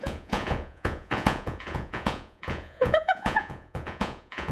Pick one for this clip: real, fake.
fake